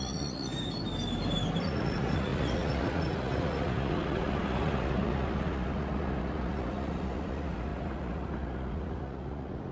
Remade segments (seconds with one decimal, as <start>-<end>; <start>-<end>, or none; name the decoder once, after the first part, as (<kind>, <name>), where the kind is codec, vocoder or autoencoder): 0.0-0.5 (vocoder, Vocos); 1.6-9.7